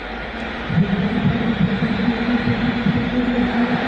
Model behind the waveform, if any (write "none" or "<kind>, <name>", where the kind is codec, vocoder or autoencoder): vocoder, BigVGAN v2